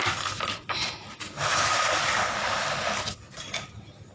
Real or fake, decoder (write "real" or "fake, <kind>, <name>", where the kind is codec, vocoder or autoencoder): real